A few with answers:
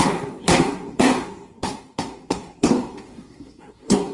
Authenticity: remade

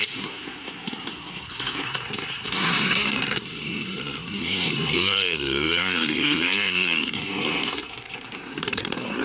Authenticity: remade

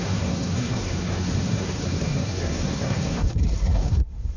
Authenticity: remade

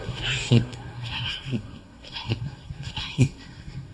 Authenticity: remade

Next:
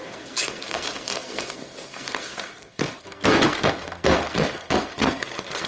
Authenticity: remade